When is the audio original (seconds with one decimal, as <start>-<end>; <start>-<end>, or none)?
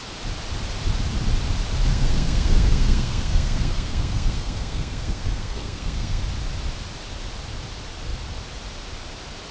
0.0-1.9; 6.2-9.5